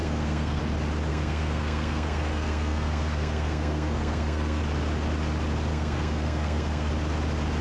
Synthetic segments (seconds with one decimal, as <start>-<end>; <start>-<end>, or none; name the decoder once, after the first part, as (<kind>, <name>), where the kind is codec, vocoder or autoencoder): 0.0-0.6 (codec, SNAC); 1.1-4.6; 5.7-6.9